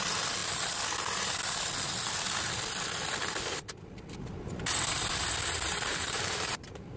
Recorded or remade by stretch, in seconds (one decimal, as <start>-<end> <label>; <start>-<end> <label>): 0.0-5.9 recorded; 5.9-7.0 remade